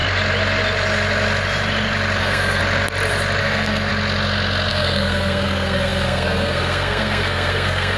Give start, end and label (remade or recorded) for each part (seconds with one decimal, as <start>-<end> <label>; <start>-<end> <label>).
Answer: 0.0-2.2 recorded; 2.2-2.6 remade; 2.6-3.4 recorded; 3.4-3.9 remade; 3.9-4.7 recorded; 4.7-8.0 remade